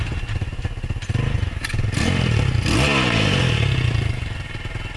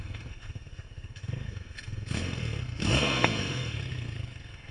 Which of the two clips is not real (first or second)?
second